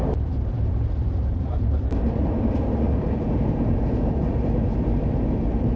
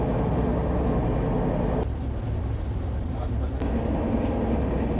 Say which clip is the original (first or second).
second